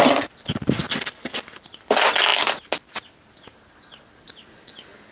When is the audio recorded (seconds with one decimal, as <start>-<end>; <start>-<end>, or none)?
0.0-0.8; 1.7-5.1